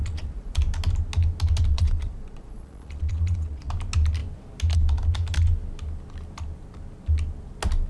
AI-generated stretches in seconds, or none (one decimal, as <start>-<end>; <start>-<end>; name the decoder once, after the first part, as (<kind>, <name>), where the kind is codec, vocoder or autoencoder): 0.0-0.6 (vocoder, Vocos); 1.7-3.7